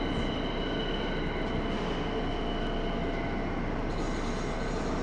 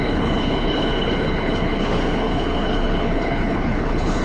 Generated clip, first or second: second